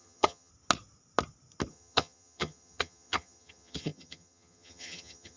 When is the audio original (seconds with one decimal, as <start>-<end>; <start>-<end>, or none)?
0.5-1.7